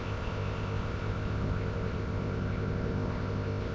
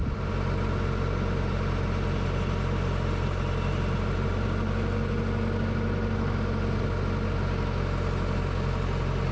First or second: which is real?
second